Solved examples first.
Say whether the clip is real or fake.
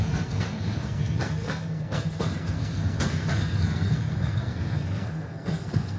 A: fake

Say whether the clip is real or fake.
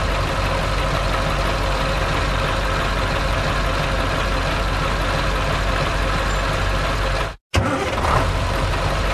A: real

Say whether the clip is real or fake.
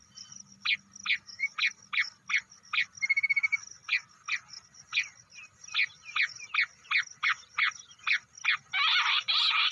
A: real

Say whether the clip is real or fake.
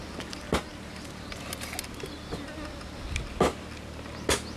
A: real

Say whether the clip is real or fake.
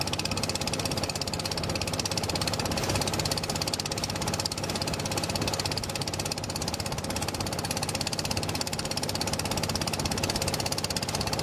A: real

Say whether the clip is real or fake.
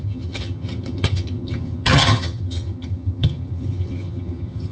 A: fake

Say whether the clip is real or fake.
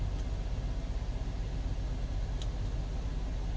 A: real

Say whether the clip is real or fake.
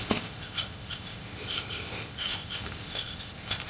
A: fake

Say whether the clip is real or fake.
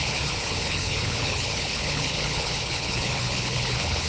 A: fake